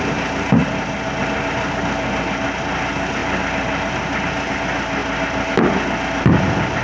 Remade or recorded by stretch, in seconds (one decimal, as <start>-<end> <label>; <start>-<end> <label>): 0.0-6.8 recorded